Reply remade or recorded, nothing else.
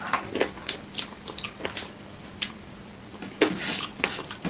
recorded